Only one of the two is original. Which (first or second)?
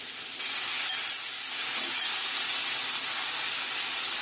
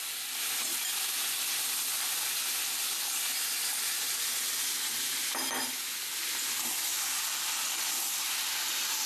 second